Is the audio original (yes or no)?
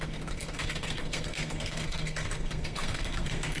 no